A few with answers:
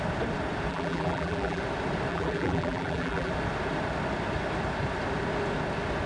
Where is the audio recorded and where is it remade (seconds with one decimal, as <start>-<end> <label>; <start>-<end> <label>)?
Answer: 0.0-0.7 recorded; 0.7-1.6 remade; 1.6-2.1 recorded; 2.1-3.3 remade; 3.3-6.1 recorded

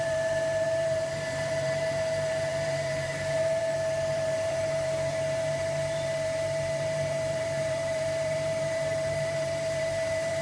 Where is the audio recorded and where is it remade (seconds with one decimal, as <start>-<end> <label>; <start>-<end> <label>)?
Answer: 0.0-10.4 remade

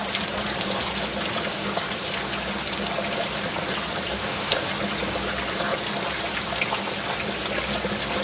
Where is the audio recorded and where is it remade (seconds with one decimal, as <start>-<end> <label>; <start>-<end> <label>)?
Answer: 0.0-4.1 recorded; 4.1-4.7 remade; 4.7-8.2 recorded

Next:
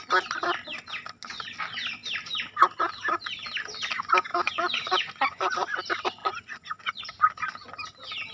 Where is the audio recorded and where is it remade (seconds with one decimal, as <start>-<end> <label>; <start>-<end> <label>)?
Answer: 0.0-4.3 recorded; 4.3-5.8 remade; 5.8-6.2 recorded; 6.2-7.0 remade; 7.0-8.3 recorded

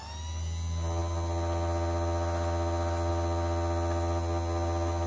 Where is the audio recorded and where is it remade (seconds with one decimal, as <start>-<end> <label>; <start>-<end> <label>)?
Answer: 0.0-5.1 recorded